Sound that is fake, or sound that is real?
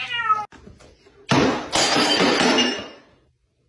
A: real